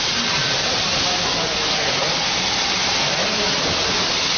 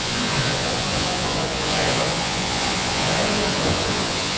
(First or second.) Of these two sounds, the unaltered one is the first